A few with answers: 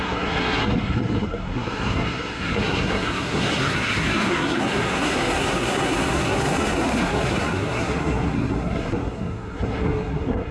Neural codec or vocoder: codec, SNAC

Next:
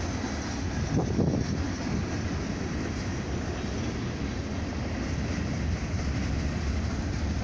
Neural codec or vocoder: none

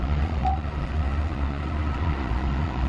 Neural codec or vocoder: vocoder, Vocos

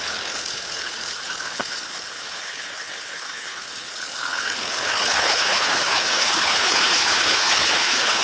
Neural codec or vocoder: codec, HILCodec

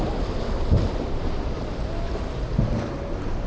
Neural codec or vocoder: none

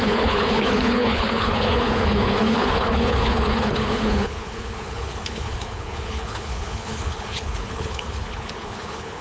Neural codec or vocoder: codec, HILCodec